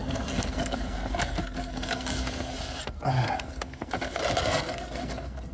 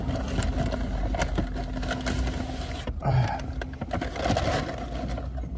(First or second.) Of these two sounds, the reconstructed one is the first